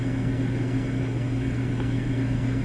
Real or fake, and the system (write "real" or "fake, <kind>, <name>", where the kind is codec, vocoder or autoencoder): fake, codec, SNAC